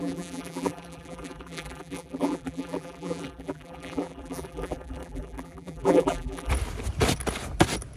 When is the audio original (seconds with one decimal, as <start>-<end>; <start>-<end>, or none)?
6.5-8.0